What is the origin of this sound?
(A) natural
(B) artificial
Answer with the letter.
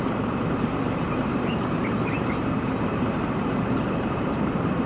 B